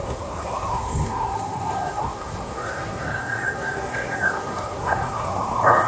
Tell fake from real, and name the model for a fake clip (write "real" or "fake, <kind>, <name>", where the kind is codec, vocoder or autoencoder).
fake, codec, SNAC